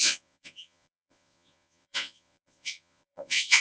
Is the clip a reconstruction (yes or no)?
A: yes